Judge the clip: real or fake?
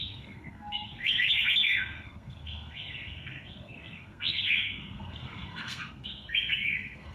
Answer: fake